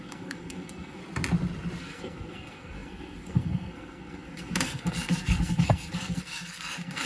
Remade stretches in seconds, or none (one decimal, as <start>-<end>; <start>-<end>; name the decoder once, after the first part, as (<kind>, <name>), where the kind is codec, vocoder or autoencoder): 0.0-1.0 (codec, SNAC); 1.8-7.1